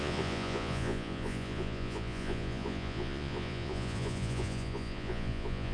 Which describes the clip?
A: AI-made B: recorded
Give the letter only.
A